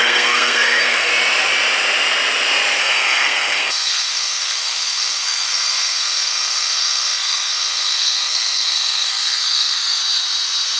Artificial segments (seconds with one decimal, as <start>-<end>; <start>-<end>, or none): 0.0-1.1; 2.8-10.0

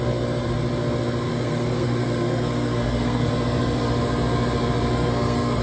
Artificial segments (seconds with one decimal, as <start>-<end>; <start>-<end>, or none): 1.3-3.3; 4.9-5.6

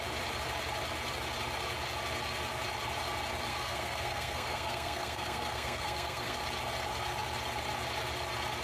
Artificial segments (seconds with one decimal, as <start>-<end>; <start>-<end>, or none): 3.5-6.4

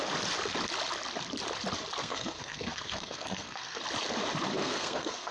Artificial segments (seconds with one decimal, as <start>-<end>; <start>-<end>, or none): 2.0-3.8; 4.6-5.3